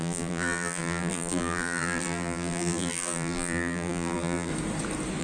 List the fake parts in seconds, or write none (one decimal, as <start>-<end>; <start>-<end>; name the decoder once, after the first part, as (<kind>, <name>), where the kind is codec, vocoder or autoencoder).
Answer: 0.0-4.5 (vocoder, BigVGAN v2)